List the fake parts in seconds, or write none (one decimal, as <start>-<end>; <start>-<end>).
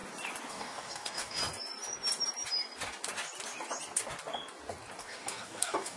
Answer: 0.5-1.4; 5.0-6.0